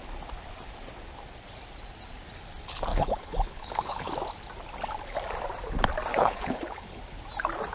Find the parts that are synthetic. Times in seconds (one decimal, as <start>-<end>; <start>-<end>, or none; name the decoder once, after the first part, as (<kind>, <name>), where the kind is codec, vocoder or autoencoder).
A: 2.9-4.1 (codec, HILCodec); 6.1-7.0